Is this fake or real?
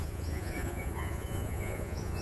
fake